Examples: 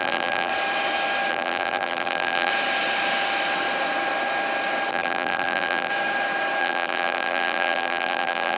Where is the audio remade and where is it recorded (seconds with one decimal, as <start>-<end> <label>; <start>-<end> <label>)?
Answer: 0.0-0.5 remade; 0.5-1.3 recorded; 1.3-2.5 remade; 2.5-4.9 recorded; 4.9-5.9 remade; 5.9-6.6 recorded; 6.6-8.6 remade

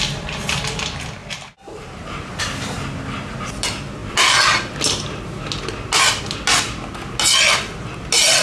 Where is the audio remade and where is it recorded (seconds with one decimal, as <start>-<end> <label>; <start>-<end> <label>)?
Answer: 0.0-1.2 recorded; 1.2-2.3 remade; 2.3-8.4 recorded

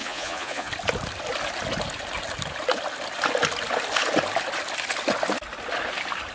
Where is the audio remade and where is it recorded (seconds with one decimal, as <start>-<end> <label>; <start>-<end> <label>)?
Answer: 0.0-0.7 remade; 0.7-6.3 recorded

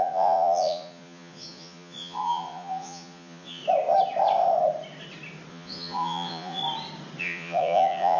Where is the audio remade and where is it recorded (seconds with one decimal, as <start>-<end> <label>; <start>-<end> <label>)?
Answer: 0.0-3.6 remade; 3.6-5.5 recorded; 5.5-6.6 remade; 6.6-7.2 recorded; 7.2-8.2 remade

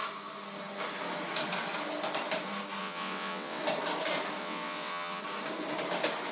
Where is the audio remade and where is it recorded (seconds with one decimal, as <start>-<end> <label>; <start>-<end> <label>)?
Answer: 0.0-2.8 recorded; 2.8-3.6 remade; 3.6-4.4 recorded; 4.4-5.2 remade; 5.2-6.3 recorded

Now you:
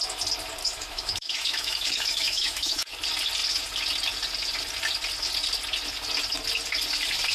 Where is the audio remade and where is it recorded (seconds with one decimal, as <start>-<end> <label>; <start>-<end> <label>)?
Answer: 0.0-0.6 recorded; 0.6-2.9 remade; 2.9-7.3 recorded